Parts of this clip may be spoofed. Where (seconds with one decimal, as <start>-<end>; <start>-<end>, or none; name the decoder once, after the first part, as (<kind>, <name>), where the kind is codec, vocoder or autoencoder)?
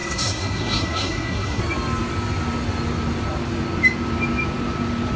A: 0.0-1.6 (codec, SNAC)